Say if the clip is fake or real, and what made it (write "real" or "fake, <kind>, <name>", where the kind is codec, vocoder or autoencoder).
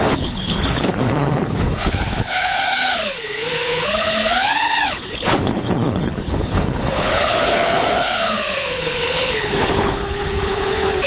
fake, codec, HILCodec